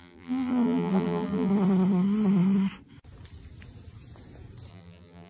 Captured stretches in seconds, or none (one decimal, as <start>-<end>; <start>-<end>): 1.5-4.7